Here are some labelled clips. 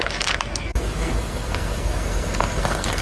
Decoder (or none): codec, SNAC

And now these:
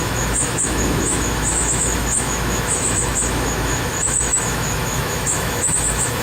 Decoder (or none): autoencoder, DAC-VAE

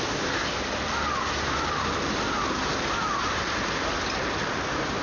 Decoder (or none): none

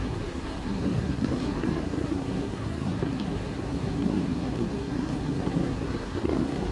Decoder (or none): codec, SNAC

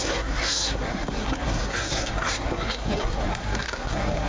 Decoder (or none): codec, SNAC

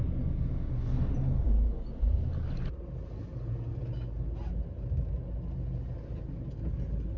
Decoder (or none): none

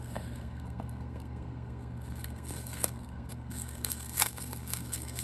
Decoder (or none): codec, SNAC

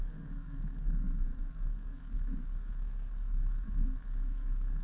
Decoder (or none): codec, SNAC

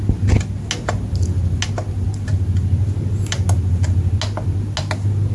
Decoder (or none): none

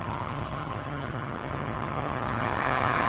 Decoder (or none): vocoder, HiFi-GAN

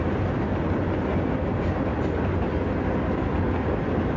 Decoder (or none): none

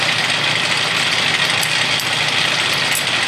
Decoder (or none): none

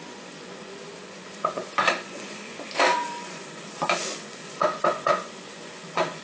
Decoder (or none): vocoder, Vocos